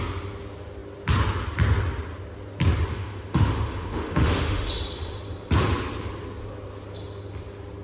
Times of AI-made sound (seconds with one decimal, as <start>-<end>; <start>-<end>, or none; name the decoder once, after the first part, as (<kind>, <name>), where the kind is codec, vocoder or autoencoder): 2.9-4.7 (autoencoder, DAC-VAE)